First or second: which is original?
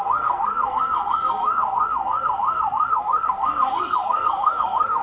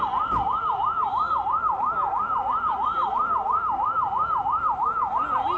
second